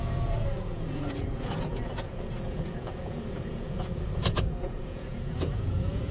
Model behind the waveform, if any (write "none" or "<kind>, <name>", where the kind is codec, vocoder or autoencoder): vocoder, Vocos